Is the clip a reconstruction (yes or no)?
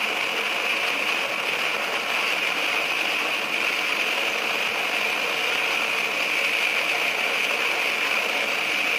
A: no